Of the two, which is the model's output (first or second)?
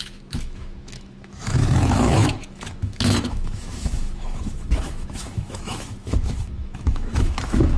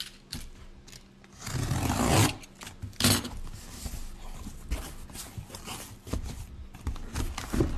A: first